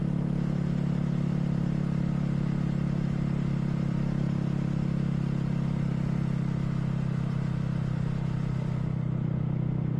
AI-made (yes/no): no